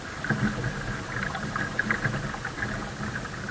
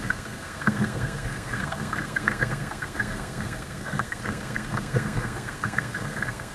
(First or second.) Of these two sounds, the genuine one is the first